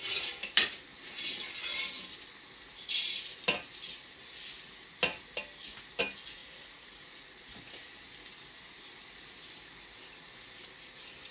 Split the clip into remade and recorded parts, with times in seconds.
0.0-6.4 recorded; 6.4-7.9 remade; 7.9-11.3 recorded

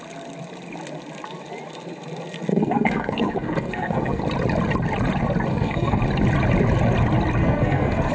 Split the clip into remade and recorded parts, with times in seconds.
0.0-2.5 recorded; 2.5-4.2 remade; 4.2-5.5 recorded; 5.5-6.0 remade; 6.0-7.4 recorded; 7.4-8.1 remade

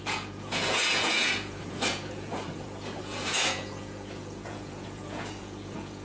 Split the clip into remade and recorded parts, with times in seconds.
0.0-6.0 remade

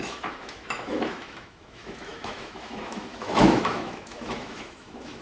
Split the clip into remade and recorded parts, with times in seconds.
0.0-5.2 remade

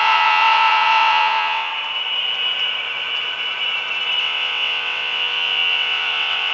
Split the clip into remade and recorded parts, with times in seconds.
0.0-1.7 remade; 1.7-4.2 recorded; 4.2-6.5 remade